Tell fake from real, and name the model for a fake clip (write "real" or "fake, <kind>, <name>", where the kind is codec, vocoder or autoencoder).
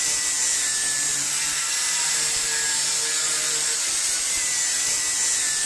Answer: fake, vocoder, BigVGAN v2